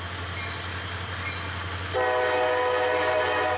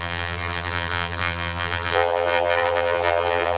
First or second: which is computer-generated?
second